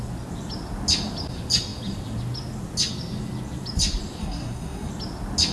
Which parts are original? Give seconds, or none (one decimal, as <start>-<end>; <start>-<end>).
0.0-4.2; 4.9-5.5